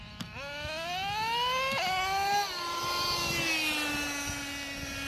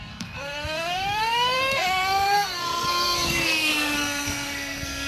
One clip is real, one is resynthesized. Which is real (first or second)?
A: first